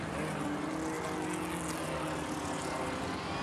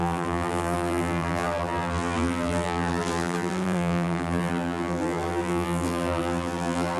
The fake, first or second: second